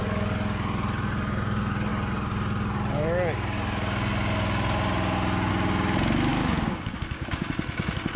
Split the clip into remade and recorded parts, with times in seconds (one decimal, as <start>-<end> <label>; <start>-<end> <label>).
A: 0.0-6.3 recorded; 6.3-7.5 remade; 7.5-8.2 recorded